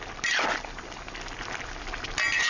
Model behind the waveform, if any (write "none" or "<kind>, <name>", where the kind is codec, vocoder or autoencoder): none